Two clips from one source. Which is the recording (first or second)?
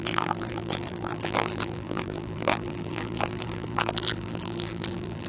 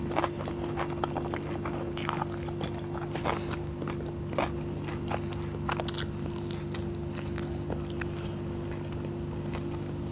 second